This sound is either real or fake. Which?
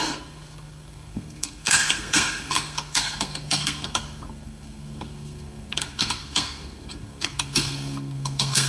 fake